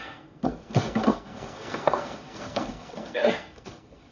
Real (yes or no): no